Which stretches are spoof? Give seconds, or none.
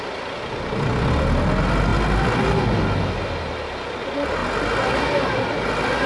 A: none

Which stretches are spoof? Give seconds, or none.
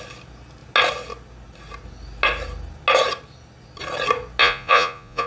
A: 4.4-5.3 (vocoder, Vocos)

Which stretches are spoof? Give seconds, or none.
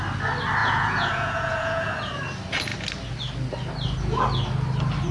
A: 0.6-1.9 (vocoder, Vocos)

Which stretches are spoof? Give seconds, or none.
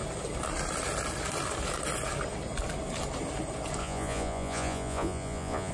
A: 3.8-5.7 (vocoder, Vocos)